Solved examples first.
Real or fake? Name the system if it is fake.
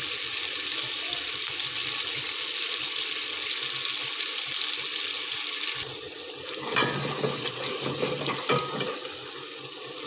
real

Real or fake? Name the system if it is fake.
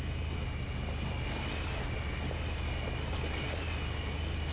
real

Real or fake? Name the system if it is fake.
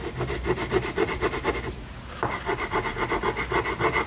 real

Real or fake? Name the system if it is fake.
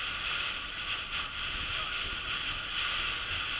real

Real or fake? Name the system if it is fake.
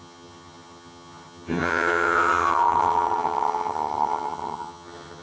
fake, vocoder, HiFi-GAN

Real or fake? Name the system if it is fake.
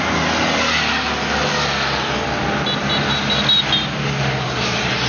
real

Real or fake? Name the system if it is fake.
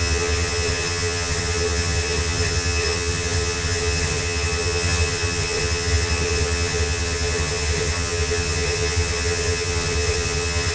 fake, vocoder, HiFi-GAN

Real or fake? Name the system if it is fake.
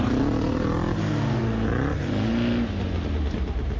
real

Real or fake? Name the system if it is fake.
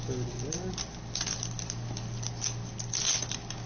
real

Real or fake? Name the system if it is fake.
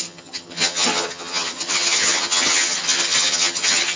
fake, vocoder, HiFi-GAN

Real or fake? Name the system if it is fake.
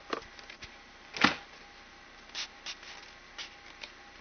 real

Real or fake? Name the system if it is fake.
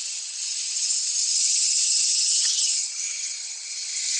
fake, vocoder, HiFi-GAN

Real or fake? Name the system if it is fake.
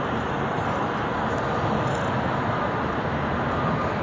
real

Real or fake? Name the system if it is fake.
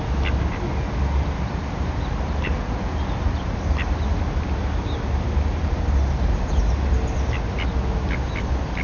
real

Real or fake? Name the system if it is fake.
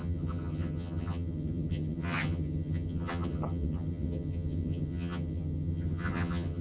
fake, vocoder, HiFi-GAN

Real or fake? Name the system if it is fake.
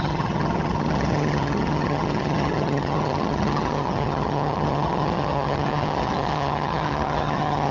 fake, vocoder, HiFi-GAN